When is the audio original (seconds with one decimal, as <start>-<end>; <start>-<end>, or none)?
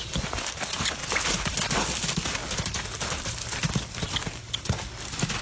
0.0-5.4